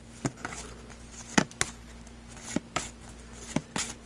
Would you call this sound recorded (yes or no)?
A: yes